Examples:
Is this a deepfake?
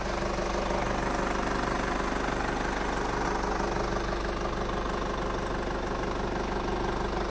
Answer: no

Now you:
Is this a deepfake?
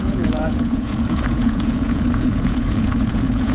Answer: yes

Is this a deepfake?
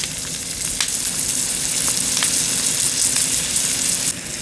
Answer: no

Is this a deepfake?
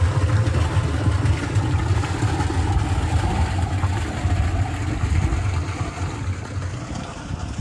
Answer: no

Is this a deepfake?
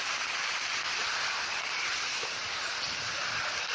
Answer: no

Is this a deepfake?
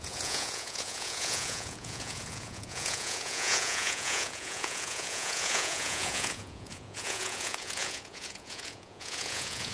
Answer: yes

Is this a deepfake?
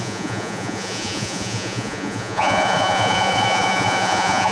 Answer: yes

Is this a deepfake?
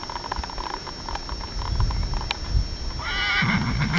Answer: no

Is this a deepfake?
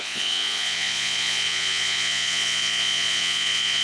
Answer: yes